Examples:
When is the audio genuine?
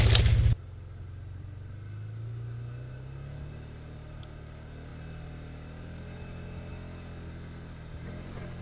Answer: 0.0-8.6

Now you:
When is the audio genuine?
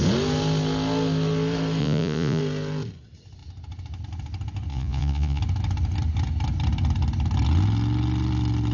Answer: 0.0-1.8; 2.4-4.7; 5.4-8.7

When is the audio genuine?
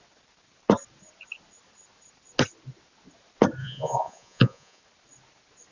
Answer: 0.0-3.6; 4.8-5.7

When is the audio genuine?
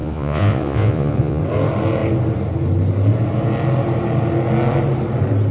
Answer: 1.4-5.5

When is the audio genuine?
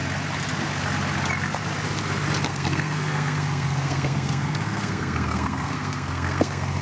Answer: 0.0-2.5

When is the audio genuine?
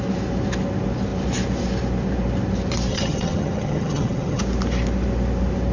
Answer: 0.0-2.9; 4.4-5.7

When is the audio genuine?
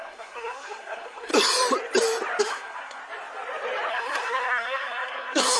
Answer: 1.3-2.4; 3.0-3.9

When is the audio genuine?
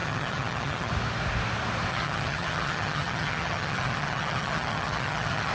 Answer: 0.9-1.9